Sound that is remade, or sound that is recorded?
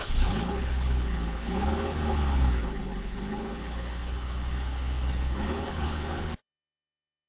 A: remade